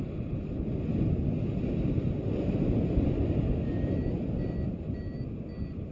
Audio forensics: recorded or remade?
recorded